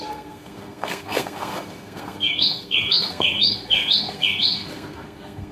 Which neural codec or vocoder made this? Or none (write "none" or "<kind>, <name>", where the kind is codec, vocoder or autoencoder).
codec, SNAC